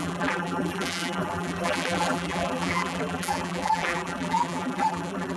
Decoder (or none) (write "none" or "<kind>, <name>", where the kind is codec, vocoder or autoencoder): vocoder, BigVGAN v2